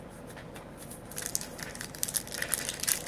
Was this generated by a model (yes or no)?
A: no